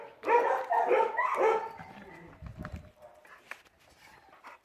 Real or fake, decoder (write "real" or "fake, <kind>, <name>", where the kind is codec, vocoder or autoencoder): real